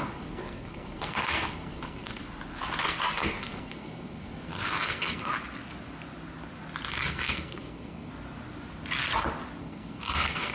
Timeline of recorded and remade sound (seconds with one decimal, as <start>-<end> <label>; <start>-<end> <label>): 0.0-2.2 remade; 2.2-2.8 recorded; 2.8-5.3 remade; 5.3-6.9 recorded; 6.9-8.1 remade; 8.1-9.6 recorded; 9.6-10.5 remade